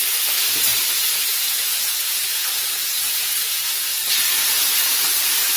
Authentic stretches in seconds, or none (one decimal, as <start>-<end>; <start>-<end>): 0.0-0.7; 4.1-5.6

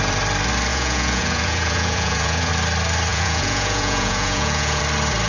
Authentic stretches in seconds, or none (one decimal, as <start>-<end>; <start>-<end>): 0.0-0.7; 2.5-3.1; 4.8-5.3

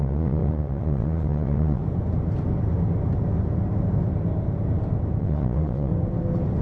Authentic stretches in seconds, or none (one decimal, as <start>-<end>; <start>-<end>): 1.8-5.2; 5.9-6.6

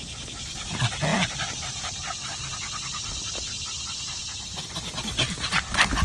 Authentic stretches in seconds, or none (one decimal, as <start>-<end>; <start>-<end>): 0.0-6.0

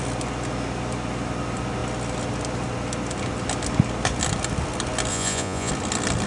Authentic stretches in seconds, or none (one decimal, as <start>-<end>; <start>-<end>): 0.0-5.1; 5.7-6.3

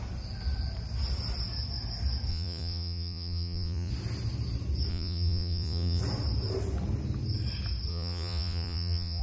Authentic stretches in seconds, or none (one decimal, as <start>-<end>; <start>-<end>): 0.0-2.3; 3.9-4.9; 6.0-7.9

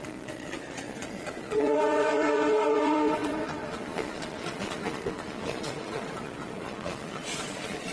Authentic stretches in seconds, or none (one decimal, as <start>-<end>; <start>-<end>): none